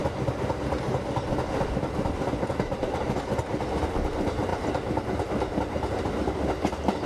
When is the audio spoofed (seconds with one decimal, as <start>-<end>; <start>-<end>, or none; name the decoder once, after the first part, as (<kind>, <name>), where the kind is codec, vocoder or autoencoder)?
none